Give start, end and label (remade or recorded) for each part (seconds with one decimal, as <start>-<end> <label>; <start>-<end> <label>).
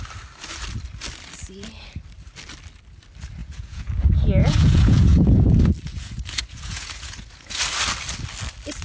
0.0-3.4 recorded; 3.4-3.9 remade; 3.9-4.4 recorded; 4.4-5.5 remade; 5.5-5.9 recorded; 5.9-7.6 remade; 7.6-8.8 recorded